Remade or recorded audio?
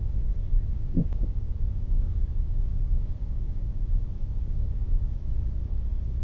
remade